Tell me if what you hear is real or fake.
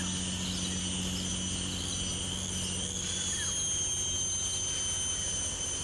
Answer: real